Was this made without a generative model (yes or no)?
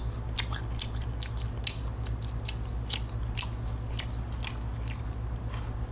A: yes